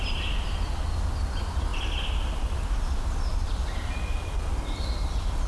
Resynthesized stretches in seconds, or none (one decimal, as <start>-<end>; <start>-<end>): none